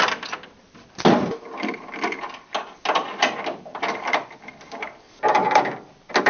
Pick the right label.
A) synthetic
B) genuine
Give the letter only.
B